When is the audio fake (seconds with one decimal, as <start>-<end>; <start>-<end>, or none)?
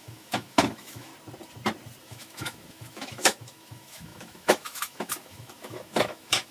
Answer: 0.0-1.1; 2.0-6.5